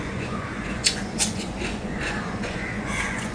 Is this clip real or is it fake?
fake